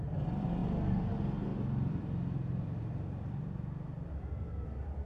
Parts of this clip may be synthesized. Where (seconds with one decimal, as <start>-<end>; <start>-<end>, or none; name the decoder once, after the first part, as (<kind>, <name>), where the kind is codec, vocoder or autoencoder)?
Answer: 0.0-0.6 (vocoder, BigVGAN v2); 1.1-5.0